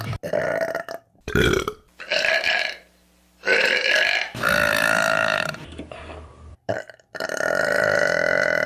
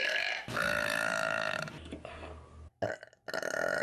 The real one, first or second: second